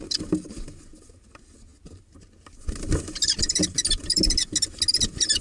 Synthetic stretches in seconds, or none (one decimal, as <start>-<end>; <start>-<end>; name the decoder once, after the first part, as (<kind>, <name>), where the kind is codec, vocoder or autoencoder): none